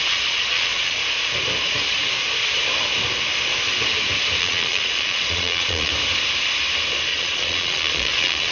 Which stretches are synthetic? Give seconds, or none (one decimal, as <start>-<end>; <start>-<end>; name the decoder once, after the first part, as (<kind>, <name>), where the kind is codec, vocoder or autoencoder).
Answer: 0.0-1.0 (vocoder, Vocos); 4.4-5.9; 7.1-8.5

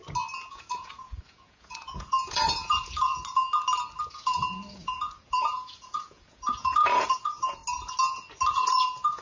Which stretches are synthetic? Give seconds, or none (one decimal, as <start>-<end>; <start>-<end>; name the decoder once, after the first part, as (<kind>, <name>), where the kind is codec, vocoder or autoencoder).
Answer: 0.5-3.1 (vocoder, Vocos); 4.1-7.6; 8.5-9.2